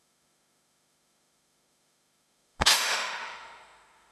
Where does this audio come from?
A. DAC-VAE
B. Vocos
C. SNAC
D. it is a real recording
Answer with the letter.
A